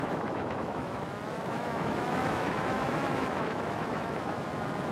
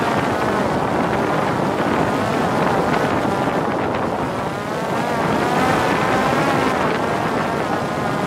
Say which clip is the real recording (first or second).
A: second